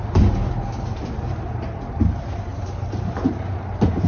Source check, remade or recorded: remade